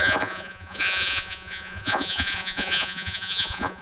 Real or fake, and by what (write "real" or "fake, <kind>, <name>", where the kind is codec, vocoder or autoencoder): fake, vocoder, Vocos